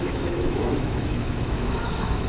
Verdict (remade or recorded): remade